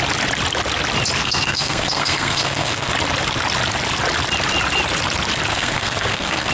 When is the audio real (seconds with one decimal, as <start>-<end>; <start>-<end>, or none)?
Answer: 0.0-1.2; 2.9-5.5